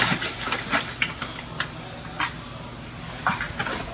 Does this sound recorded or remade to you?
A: recorded